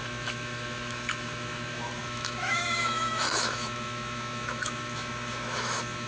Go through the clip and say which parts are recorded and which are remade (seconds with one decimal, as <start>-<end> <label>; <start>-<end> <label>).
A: 0.0-6.1 remade